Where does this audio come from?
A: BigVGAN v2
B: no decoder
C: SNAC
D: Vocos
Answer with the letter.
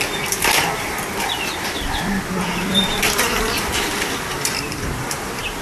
A